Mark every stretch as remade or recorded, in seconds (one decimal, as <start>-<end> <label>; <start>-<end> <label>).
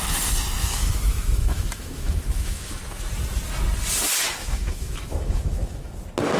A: 0.0-0.6 recorded; 0.6-2.8 remade; 2.8-4.4 recorded; 4.4-5.9 remade; 5.9-6.4 recorded